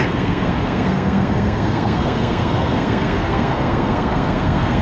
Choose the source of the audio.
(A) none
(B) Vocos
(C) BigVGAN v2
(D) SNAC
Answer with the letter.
D